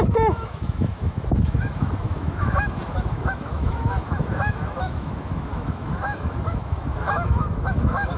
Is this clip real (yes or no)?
no